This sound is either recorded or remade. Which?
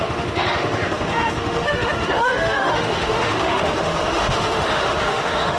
remade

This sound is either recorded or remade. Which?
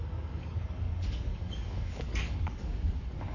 remade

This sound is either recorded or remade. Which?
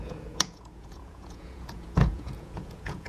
remade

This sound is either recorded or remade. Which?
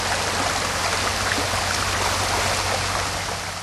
recorded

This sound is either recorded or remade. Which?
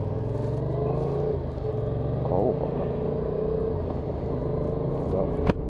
recorded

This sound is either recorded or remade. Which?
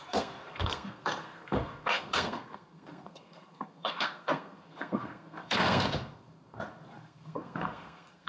remade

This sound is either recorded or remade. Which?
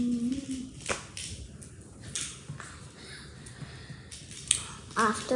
recorded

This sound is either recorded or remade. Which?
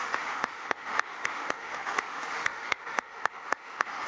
remade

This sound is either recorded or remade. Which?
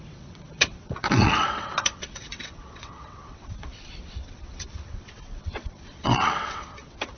remade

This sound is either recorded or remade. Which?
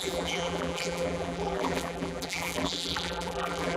remade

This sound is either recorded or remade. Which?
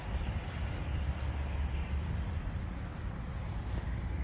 recorded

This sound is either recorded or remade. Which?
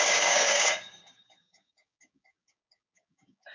remade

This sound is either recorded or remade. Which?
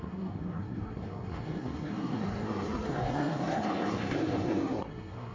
remade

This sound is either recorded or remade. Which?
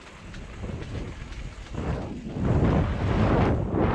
recorded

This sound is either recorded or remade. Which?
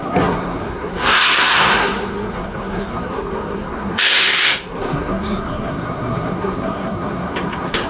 remade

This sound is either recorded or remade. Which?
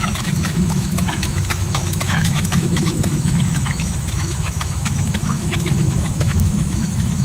remade